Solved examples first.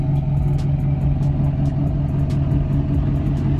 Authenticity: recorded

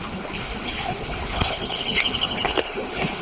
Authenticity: remade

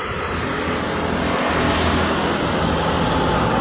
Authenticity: recorded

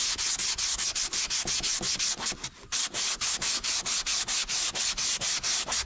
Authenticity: recorded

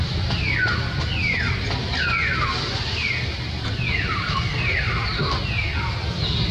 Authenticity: recorded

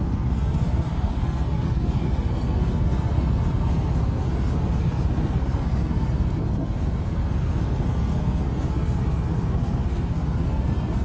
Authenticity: remade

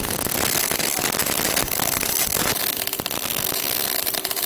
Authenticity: recorded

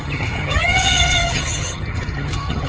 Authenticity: remade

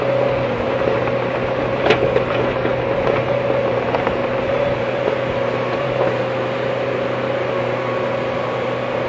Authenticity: recorded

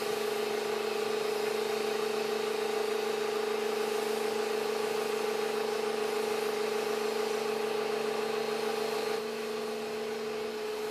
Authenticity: recorded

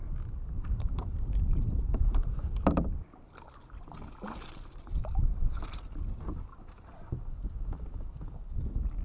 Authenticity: recorded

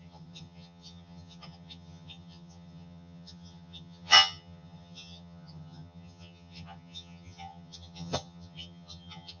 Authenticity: remade